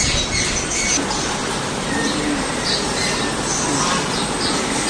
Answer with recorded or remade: recorded